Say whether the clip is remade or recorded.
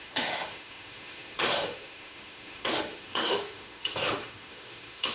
remade